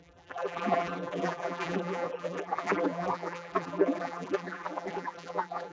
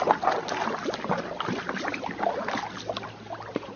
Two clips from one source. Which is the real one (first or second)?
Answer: second